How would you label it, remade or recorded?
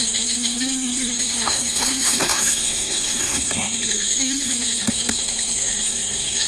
remade